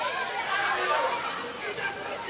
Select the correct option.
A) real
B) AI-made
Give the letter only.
A